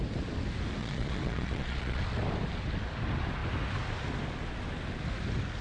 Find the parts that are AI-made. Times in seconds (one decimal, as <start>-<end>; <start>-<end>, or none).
0.8-2.0

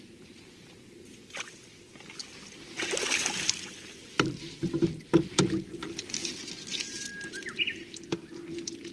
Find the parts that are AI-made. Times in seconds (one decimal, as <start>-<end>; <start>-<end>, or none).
none